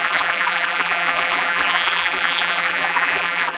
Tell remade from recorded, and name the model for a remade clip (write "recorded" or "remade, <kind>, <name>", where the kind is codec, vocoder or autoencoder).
remade, vocoder, BigVGAN v2